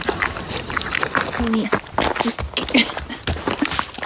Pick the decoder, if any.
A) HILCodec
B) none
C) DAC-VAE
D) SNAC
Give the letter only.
B